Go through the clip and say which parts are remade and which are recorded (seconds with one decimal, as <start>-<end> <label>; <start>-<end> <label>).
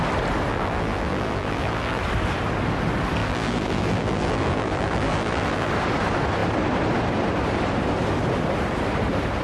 0.0-0.5 recorded; 0.5-2.0 remade; 2.0-3.2 recorded; 3.2-5.7 remade; 5.7-9.4 recorded